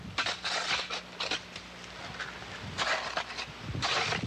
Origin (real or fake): real